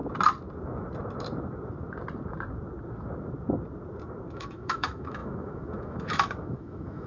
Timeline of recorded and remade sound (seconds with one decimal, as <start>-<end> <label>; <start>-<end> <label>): 0.0-4.3 recorded; 4.3-7.1 remade